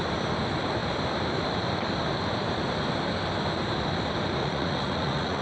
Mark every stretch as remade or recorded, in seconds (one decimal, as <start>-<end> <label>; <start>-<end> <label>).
0.0-4.4 recorded; 4.4-5.4 remade